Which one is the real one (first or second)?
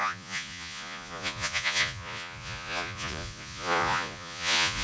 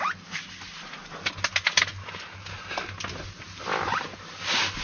second